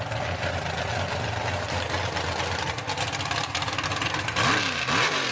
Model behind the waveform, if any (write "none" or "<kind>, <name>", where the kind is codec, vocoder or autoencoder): none